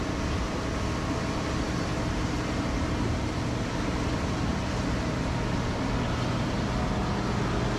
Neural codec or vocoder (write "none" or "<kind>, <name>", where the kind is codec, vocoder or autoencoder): none